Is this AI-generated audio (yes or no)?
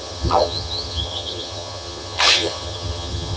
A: yes